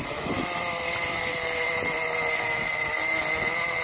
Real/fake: real